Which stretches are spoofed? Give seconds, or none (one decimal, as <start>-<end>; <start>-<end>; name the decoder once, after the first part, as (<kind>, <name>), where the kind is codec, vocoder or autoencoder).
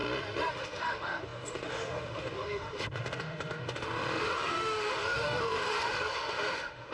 0.5-6.9 (autoencoder, DAC-VAE)